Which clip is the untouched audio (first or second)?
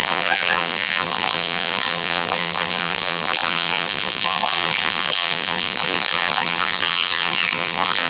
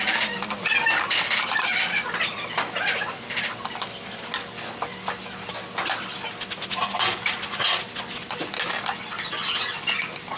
second